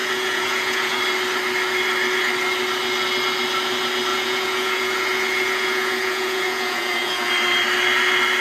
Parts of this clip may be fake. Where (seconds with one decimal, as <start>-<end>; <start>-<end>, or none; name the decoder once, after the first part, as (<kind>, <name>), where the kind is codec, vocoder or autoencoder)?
0.0-1.0 (vocoder, Vocos); 4.1-7.3